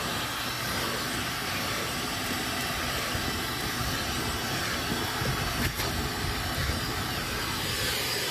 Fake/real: real